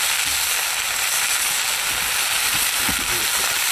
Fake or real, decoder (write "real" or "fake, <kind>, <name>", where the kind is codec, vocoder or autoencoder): real